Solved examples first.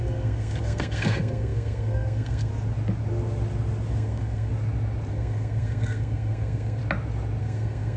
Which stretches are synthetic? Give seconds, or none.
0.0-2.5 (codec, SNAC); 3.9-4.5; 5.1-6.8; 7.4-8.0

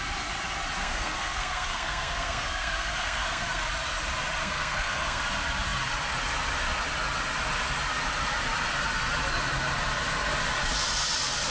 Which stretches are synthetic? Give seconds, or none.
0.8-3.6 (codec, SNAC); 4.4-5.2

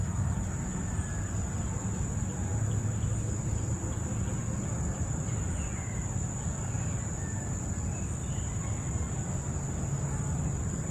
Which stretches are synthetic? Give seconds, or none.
none